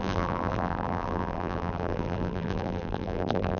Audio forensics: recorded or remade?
remade